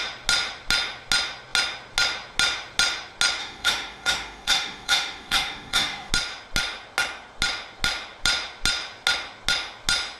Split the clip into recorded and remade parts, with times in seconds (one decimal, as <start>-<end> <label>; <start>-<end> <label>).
0.0-3.4 recorded; 3.4-6.1 remade; 6.1-10.2 recorded

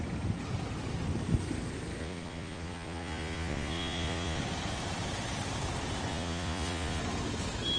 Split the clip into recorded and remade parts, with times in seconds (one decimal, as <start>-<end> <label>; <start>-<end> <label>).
0.0-2.0 recorded; 2.0-4.4 remade; 4.4-6.1 recorded; 6.1-7.0 remade; 7.0-7.8 recorded